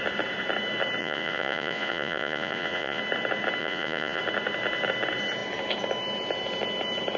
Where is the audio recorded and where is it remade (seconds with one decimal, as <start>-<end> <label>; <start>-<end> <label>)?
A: 0.0-1.0 recorded; 1.0-3.0 remade; 3.0-3.6 recorded; 3.6-4.2 remade; 4.2-7.2 recorded